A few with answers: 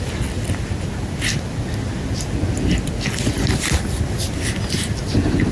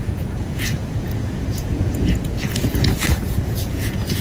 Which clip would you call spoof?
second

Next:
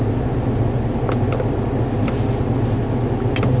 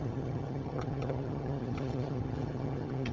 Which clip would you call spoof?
second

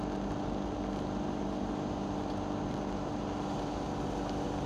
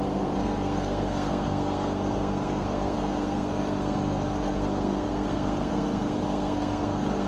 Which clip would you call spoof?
second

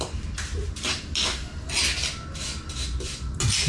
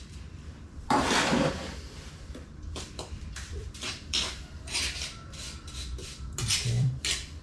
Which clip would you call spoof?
second